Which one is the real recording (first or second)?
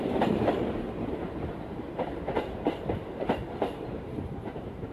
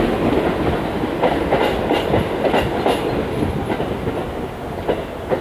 second